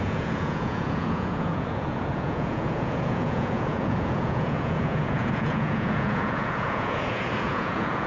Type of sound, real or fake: fake